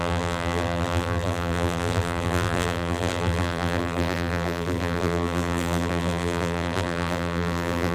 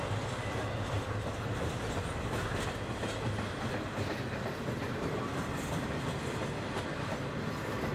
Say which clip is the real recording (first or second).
second